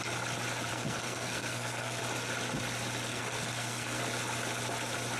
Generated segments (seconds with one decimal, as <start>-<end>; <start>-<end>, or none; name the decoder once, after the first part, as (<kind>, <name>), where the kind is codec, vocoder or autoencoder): 0.7-2.0 (codec, SNAC); 3.1-4.0